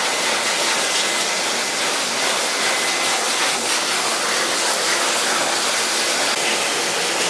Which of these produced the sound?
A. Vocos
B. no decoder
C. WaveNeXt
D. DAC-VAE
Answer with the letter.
B